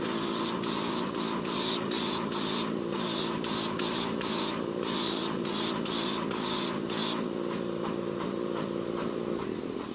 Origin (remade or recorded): recorded